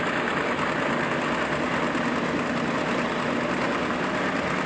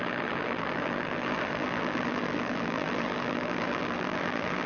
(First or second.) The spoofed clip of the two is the second